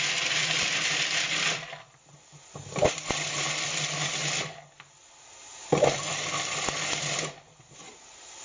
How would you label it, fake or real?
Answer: real